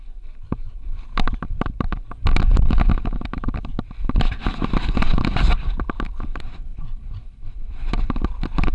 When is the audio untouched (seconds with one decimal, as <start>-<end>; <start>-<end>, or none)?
0.0-8.7